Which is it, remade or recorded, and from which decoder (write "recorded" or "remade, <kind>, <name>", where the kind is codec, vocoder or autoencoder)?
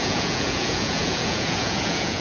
remade, vocoder, Vocos